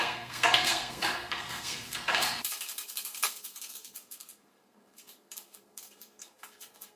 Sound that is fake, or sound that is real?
fake